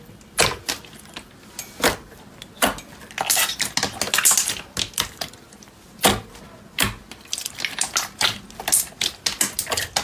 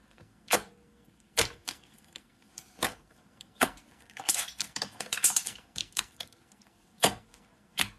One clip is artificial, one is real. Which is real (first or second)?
first